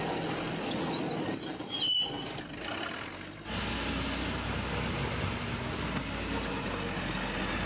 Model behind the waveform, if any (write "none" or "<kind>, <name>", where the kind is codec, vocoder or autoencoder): none